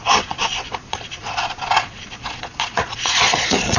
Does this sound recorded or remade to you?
remade